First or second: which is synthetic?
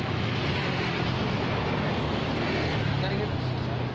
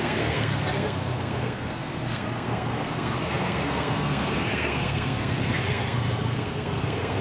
second